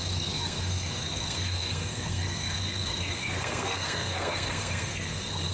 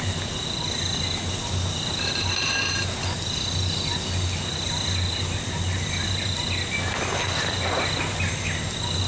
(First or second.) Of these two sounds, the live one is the second